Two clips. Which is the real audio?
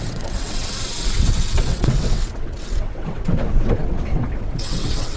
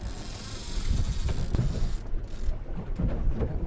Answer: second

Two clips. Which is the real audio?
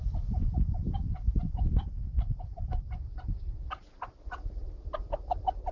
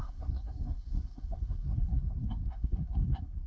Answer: first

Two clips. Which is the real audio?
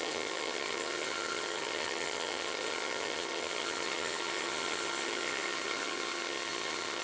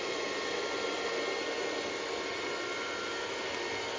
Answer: second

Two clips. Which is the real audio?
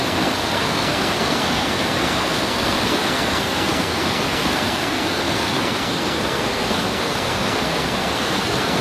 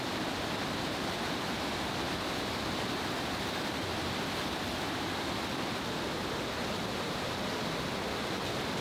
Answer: second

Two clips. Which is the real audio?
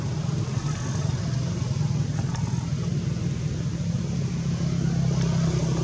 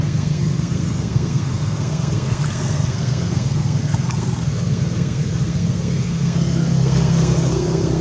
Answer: first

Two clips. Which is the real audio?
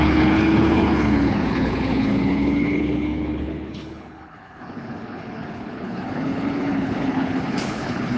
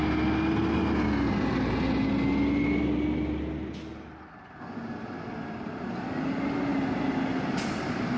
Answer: second